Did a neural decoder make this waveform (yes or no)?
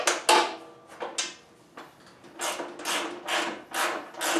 no